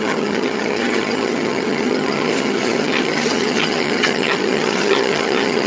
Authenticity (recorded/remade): remade